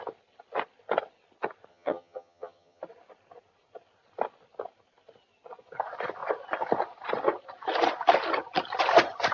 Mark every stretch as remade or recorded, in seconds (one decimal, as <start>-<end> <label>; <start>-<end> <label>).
0.0-1.7 recorded; 1.7-2.8 remade; 2.8-9.3 recorded